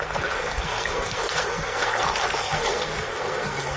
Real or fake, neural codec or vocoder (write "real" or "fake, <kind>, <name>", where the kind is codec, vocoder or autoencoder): fake, codec, SNAC